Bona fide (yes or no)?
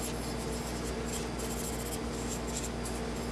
yes